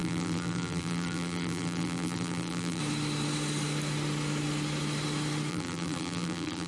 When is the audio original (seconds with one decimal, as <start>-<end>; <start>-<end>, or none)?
2.8-5.5